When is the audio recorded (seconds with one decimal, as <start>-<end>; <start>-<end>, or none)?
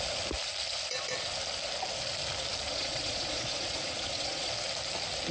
0.0-2.7; 4.5-5.3